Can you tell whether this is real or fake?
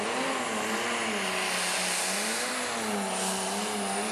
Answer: real